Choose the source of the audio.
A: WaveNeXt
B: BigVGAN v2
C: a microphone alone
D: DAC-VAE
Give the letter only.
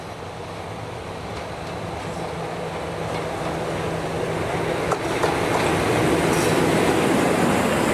C